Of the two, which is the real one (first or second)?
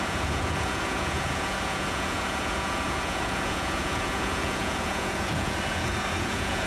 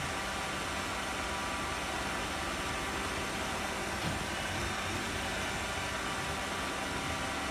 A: second